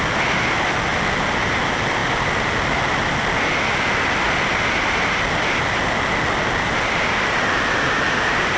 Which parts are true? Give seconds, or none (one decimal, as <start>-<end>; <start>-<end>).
0.0-0.9; 1.6-8.6